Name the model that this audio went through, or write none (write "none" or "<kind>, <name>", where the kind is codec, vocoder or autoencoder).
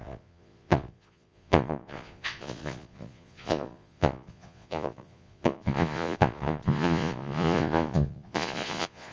vocoder, Vocos